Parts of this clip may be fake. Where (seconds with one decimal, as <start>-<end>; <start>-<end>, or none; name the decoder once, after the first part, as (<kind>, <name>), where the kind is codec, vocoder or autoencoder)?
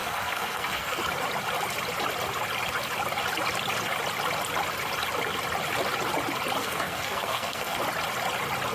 0.0-1.0 (codec, SNAC); 6.6-7.8